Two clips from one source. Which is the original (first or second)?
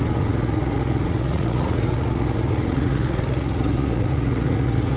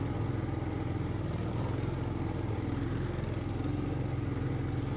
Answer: second